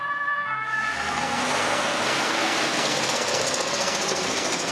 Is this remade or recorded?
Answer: remade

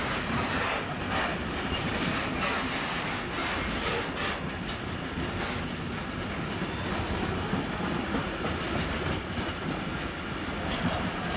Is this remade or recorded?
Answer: recorded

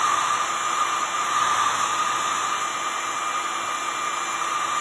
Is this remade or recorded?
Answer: recorded